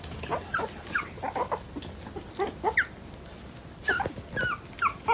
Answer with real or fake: real